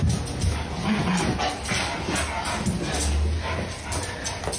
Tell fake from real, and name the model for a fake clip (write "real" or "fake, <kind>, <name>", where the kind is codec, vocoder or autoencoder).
real